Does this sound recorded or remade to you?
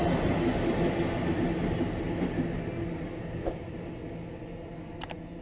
recorded